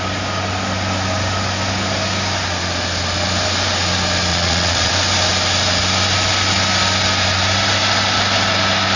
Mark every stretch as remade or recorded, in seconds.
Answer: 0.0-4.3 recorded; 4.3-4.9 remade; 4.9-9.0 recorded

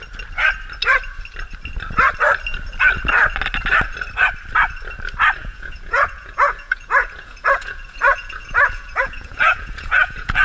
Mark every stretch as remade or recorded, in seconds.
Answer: 0.0-5.4 recorded; 5.4-10.4 remade